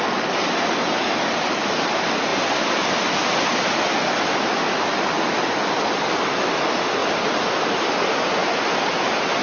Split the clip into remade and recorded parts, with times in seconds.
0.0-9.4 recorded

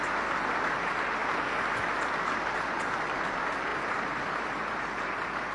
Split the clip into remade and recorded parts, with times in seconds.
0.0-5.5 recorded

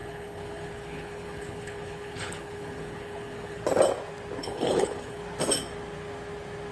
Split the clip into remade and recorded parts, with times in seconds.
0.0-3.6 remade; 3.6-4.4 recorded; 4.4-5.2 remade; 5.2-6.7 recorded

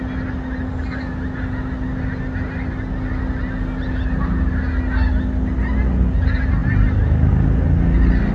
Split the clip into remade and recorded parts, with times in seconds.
0.0-8.3 recorded

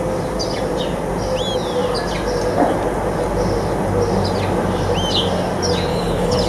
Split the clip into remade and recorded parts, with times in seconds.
0.0-5.9 recorded; 5.9-6.5 remade

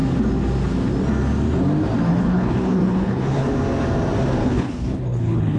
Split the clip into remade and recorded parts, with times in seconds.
0.0-2.1 recorded; 2.1-3.5 remade; 3.5-4.4 recorded; 4.4-5.6 remade